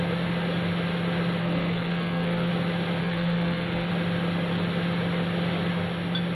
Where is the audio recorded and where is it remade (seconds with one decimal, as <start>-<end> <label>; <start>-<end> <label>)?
0.0-1.4 recorded; 1.4-2.5 remade; 2.5-3.0 recorded; 3.0-3.9 remade; 3.9-6.3 recorded